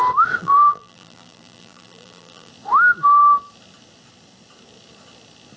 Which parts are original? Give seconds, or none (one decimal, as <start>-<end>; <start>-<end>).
0.0-0.4; 2.5-5.6